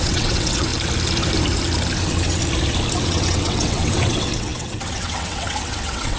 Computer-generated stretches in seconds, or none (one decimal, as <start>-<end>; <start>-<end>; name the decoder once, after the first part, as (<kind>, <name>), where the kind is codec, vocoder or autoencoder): 0.0-0.7 (vocoder, WaveNeXt); 2.0-2.4; 3.0-6.2